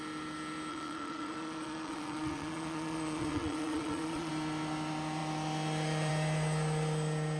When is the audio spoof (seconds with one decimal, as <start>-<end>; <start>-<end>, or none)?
0.7-4.3